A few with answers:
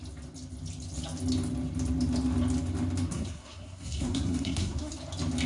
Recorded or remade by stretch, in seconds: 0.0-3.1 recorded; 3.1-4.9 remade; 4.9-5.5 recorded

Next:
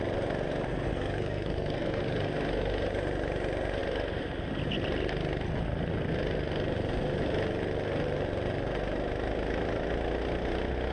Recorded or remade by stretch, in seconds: 0.0-0.9 recorded; 0.9-2.0 remade; 2.0-10.9 recorded

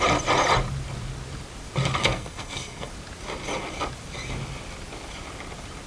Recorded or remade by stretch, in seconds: 0.0-2.0 recorded; 2.0-2.9 remade; 2.9-5.9 recorded

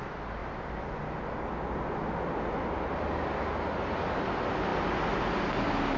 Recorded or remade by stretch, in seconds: 0.0-6.0 recorded

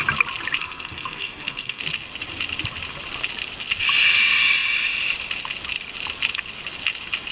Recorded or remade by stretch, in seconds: 0.0-0.6 recorded; 0.6-1.8 remade; 1.8-7.3 recorded

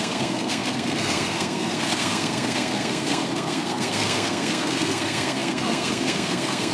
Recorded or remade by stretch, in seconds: 0.0-6.7 remade

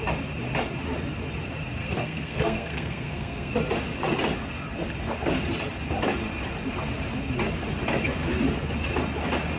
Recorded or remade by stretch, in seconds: 0.0-1.8 recorded; 1.8-3.5 remade; 3.5-9.6 recorded